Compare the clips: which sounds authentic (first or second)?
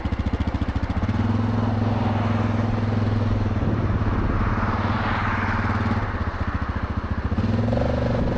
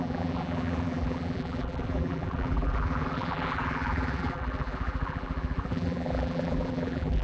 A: first